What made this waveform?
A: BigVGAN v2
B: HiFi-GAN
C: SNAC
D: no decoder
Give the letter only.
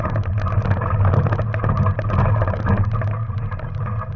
D